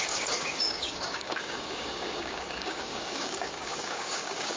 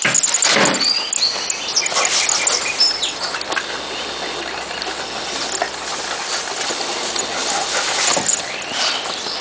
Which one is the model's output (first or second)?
first